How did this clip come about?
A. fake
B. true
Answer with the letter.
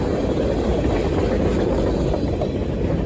B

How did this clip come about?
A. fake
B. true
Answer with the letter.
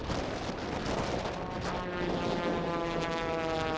B